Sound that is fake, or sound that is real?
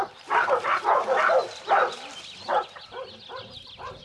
real